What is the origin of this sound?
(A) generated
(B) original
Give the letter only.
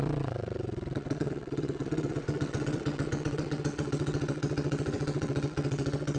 A